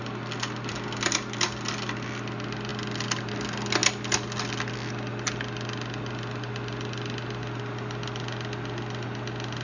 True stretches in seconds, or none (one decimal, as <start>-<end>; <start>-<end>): 0.0-9.6